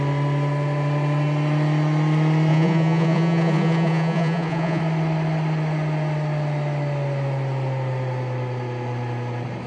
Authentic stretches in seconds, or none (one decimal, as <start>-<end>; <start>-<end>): 0.0-2.5; 4.8-9.7